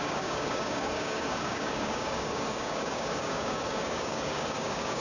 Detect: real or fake fake